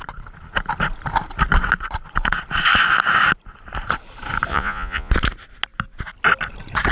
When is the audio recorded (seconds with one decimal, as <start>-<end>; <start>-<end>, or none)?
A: 0.0-4.5; 5.1-6.9